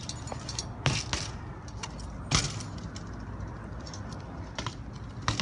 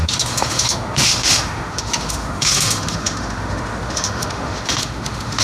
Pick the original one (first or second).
first